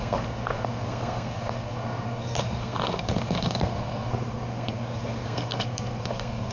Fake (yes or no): yes